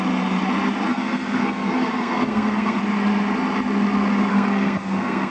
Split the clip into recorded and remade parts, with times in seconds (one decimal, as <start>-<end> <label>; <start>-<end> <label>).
0.0-0.9 recorded; 0.9-2.8 remade; 2.8-4.3 recorded; 4.3-5.3 remade